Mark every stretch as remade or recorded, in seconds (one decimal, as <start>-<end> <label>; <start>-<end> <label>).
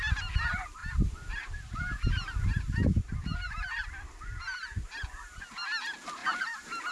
0.0-6.2 recorded; 6.2-6.9 remade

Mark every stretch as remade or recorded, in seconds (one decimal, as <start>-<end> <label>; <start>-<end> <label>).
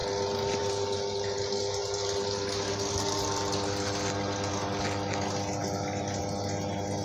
0.0-1.8 recorded; 1.8-4.5 remade; 4.5-5.6 recorded; 5.6-6.2 remade; 6.2-7.0 recorded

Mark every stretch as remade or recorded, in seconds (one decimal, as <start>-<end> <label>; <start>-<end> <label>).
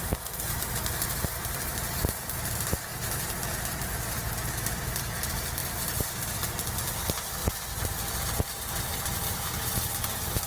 0.0-10.5 recorded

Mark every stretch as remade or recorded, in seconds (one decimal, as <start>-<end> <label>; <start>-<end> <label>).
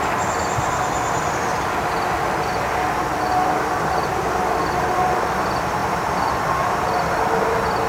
0.0-7.9 recorded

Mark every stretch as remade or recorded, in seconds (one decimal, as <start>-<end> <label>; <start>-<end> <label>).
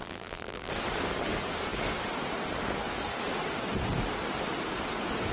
0.0-0.7 remade; 0.7-5.3 recorded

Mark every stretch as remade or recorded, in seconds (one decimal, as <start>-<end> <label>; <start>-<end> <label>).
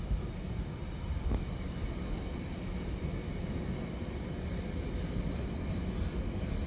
0.0-6.7 recorded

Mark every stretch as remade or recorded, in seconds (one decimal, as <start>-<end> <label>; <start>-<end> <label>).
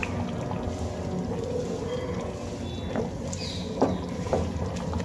0.0-5.0 recorded